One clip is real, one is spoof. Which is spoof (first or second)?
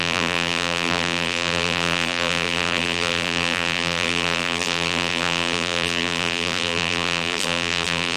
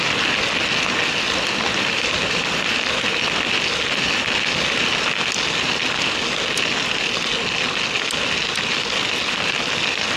first